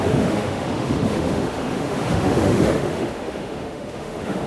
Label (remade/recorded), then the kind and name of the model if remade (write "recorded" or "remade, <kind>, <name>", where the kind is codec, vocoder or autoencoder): remade, autoencoder, DAC-VAE